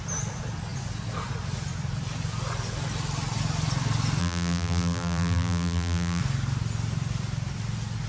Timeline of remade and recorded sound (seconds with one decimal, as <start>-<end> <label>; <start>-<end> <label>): 0.0-4.2 recorded; 4.2-6.2 remade; 6.2-8.1 recorded